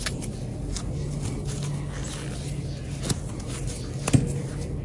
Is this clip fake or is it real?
real